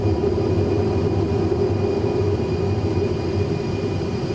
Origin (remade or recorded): recorded